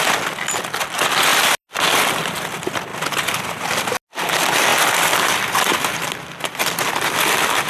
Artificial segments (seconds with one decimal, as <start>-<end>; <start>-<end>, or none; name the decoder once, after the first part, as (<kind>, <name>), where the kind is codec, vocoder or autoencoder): 2.9-3.9 (vocoder, BigVGAN v2); 4.7-6.1